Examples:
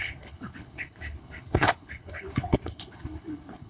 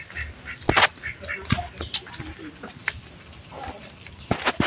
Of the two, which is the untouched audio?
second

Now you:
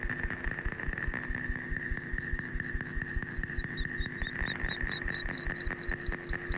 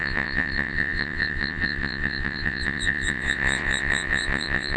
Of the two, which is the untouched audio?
first